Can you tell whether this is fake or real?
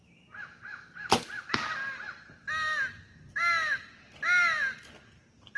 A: real